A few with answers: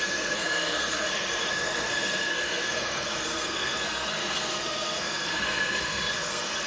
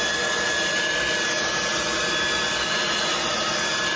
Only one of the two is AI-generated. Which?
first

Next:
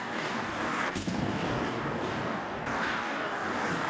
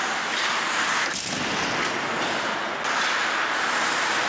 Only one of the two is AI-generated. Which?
first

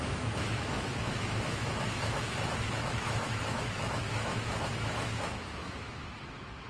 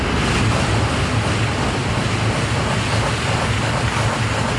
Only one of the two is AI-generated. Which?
first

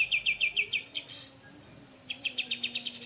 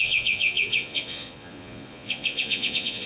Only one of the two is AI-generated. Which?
second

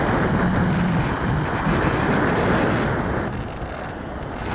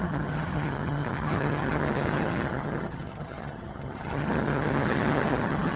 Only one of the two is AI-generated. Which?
second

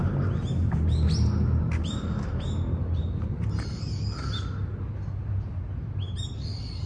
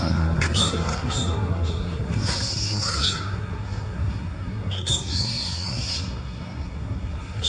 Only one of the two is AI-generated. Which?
second